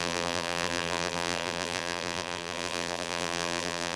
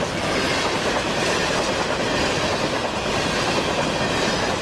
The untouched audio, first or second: second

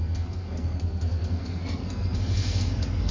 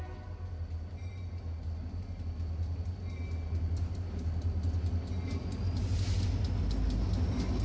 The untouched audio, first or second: second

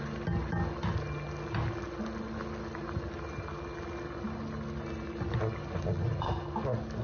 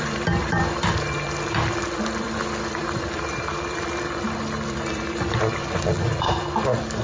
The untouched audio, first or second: first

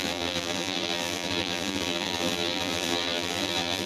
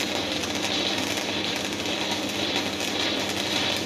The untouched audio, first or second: second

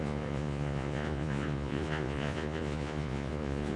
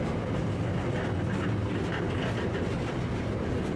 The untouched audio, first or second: second